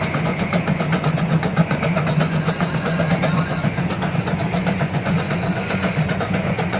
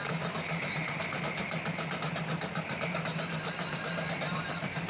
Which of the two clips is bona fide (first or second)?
second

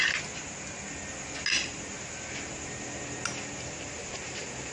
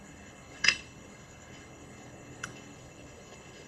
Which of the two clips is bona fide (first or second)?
first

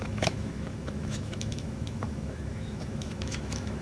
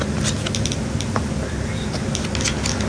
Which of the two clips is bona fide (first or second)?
second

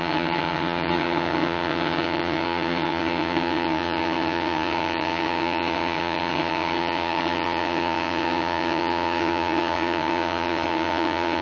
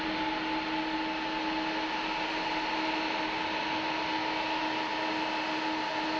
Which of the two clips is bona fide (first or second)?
second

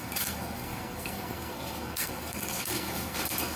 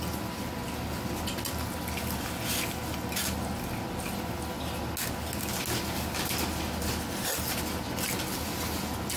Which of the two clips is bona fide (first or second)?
second